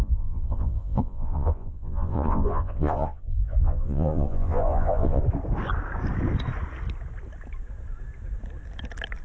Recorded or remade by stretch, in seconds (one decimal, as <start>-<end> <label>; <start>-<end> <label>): 0.0-5.2 remade; 5.2-9.2 recorded